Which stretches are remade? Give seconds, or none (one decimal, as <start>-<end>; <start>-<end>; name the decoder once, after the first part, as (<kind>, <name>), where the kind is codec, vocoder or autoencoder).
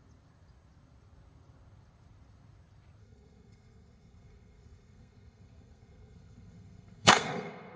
3.0-7.8 (codec, SNAC)